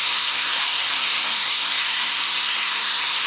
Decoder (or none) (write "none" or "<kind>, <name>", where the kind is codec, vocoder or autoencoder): codec, SNAC